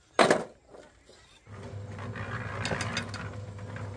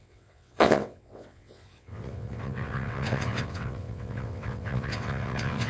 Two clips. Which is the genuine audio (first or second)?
first